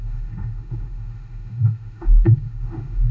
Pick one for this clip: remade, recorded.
remade